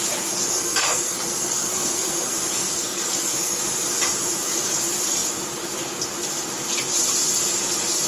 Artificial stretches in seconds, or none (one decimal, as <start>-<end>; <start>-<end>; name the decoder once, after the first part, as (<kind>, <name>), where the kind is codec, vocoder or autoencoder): 0.5-3.6 (codec, SNAC)